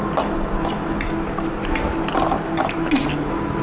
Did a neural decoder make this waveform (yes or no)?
no